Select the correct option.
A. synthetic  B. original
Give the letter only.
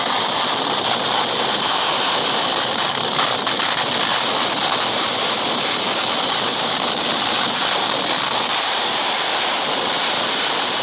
B